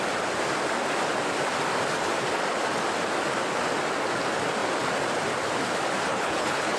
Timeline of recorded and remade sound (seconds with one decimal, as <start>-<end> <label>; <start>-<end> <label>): 0.0-6.1 recorded; 6.1-6.8 remade

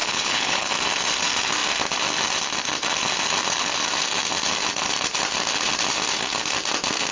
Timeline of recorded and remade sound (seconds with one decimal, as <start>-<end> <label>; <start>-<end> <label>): 0.0-0.7 remade; 0.7-7.1 recorded

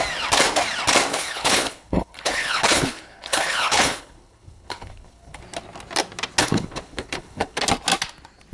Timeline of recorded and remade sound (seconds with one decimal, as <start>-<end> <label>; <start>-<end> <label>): 0.0-1.1 recorded; 1.1-5.4 remade; 5.4-6.4 recorded; 6.4-7.6 remade; 7.6-8.5 recorded

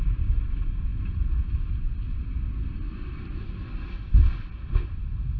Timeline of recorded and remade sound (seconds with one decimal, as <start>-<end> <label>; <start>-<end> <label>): 0.0-5.4 recorded

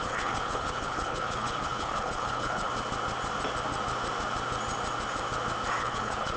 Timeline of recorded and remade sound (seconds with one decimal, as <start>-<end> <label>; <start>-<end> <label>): 0.0-2.7 remade; 2.7-5.8 recorded; 5.8-6.4 remade